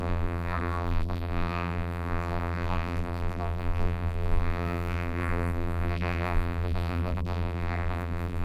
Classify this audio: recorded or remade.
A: remade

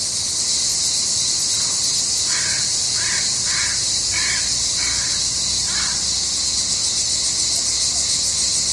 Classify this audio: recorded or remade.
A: recorded